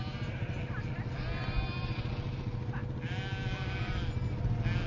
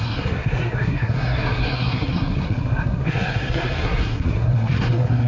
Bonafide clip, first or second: first